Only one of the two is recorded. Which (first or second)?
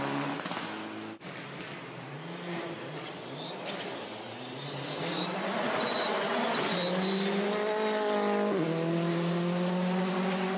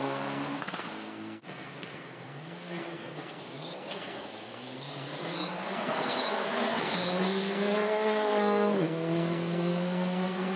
first